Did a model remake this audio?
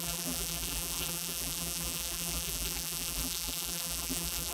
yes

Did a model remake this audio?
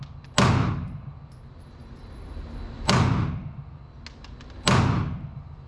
no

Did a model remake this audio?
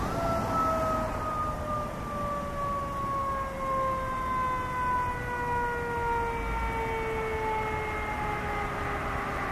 no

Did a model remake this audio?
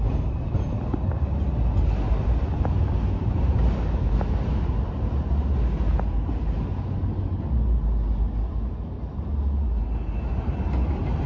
no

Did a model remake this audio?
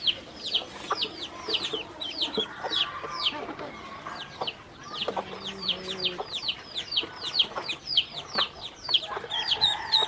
no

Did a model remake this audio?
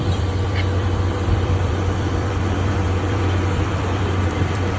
yes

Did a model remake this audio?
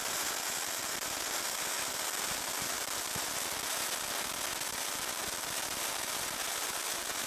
no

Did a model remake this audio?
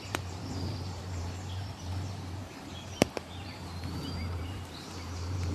yes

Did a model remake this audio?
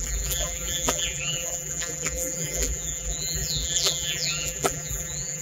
yes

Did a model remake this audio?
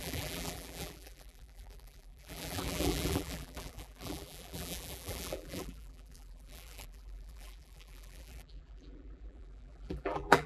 yes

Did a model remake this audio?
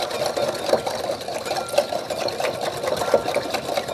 no